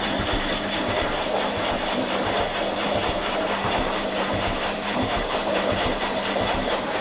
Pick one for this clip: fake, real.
fake